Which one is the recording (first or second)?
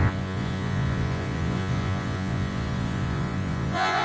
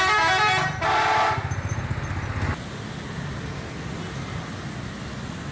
second